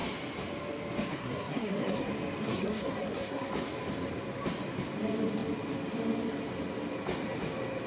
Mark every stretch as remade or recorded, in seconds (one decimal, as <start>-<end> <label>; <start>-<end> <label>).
0.0-1.1 recorded; 1.1-2.1 remade; 2.1-2.5 recorded; 2.5-3.5 remade; 3.5-7.9 recorded